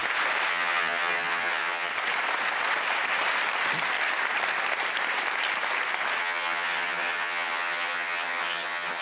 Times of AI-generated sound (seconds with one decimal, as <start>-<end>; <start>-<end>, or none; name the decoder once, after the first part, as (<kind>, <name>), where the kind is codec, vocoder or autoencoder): 0.5-1.9 (vocoder, HiFi-GAN); 6.2-9.0